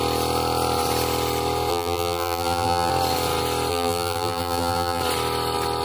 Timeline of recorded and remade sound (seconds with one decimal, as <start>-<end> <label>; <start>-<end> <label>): 0.0-1.7 recorded; 1.7-2.9 remade; 2.9-3.7 recorded; 3.7-5.0 remade; 5.0-5.8 recorded